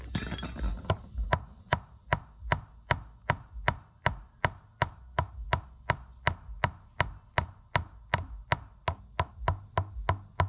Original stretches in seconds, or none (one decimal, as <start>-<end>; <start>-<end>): 0.0-10.5